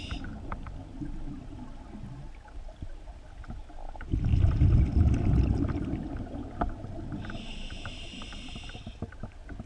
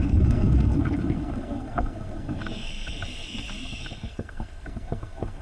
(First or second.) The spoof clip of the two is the second